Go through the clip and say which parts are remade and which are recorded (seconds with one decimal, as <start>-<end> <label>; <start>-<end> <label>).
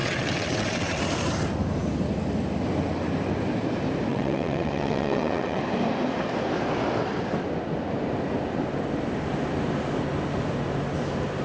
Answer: 0.0-1.0 remade; 1.0-4.1 recorded; 4.1-5.6 remade; 5.6-11.4 recorded